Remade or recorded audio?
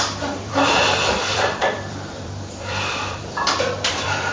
remade